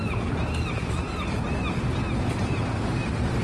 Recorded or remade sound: recorded